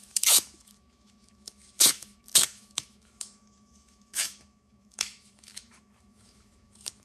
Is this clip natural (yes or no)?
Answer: no